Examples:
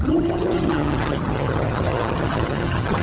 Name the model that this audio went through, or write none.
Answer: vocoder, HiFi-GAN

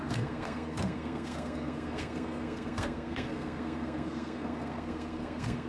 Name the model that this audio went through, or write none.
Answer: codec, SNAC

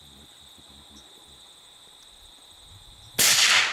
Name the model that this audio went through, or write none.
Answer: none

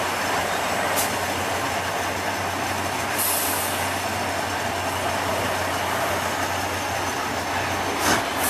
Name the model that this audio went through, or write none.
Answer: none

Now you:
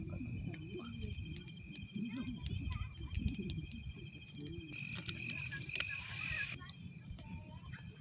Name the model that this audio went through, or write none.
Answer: none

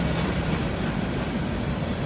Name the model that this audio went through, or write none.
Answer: none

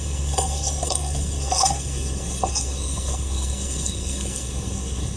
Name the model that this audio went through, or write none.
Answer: codec, SNAC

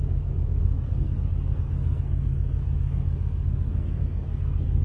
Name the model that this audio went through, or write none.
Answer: codec, SNAC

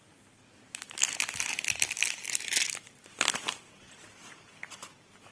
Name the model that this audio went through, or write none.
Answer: vocoder, BigVGAN v2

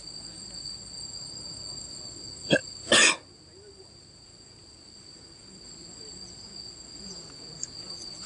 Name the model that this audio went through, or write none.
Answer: none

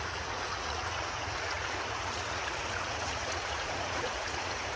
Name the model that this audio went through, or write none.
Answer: vocoder, Vocos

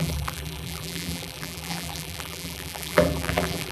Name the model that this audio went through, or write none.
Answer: vocoder, BigVGAN v2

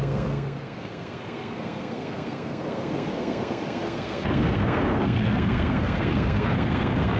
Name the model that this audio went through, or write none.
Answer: codec, SNAC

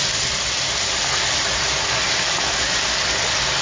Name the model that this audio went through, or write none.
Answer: none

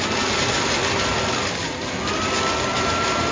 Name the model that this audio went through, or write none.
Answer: none